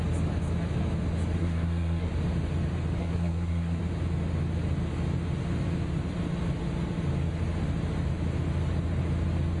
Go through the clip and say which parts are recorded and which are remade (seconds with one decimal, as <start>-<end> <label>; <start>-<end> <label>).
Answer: 0.0-1.4 recorded; 1.4-2.1 remade; 2.1-3.0 recorded; 3.0-3.8 remade; 3.8-9.6 recorded